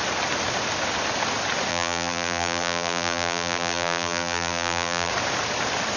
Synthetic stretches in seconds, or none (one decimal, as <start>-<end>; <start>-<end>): 1.7-5.1